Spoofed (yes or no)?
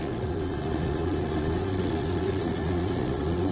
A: yes